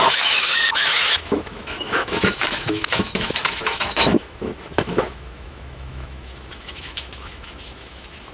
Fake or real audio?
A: fake